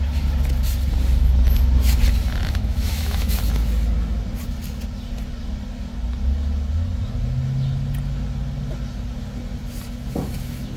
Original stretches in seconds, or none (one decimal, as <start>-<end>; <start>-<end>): 0.0-2.4; 3.4-10.8